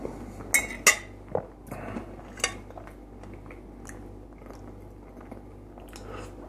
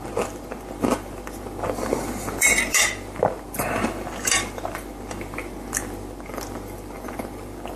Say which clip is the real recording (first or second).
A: first